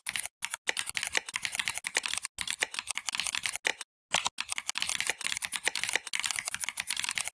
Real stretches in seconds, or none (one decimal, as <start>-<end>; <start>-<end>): 0.0-7.3